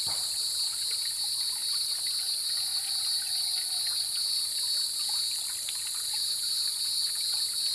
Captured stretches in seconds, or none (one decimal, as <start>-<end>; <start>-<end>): 0.0-7.7